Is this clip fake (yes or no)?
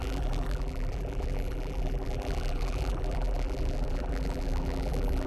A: yes